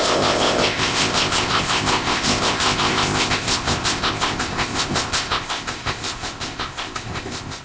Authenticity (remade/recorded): remade